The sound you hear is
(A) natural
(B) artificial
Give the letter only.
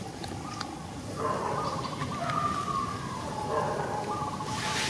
A